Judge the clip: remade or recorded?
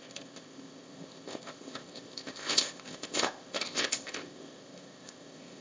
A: remade